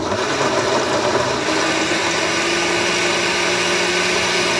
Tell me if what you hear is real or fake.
real